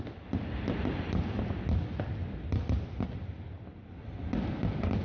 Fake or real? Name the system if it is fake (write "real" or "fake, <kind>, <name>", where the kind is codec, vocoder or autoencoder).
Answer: real